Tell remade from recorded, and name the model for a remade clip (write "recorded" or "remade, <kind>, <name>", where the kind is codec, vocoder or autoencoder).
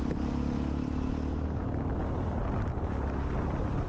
recorded